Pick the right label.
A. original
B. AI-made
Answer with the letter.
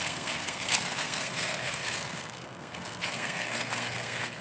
B